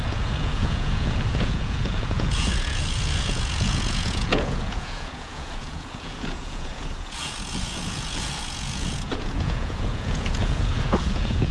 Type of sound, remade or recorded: remade